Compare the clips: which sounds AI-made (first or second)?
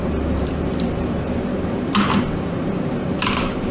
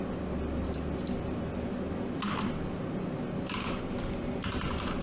first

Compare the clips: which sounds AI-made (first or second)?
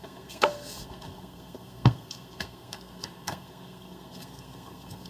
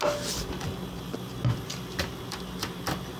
first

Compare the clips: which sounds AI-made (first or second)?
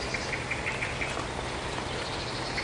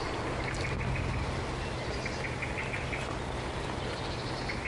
first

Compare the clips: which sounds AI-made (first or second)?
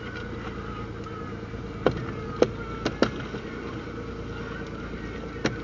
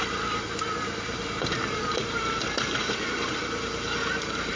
second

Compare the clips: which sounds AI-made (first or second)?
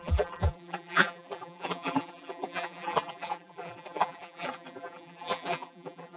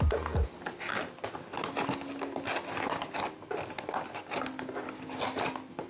first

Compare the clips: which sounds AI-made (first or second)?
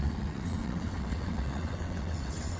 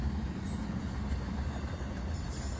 first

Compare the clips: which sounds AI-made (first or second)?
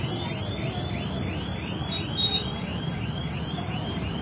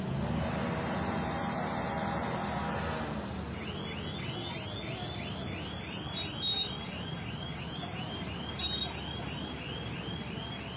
first